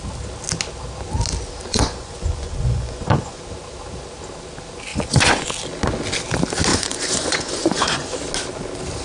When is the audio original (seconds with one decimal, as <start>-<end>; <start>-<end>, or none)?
0.0-1.7; 3.4-4.9; 5.5-6.7; 8.2-9.0